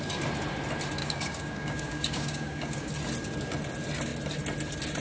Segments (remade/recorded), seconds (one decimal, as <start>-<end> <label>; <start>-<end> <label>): 0.0-1.0 recorded; 1.0-2.9 remade; 2.9-5.0 recorded